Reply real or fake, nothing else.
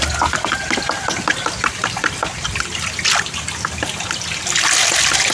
real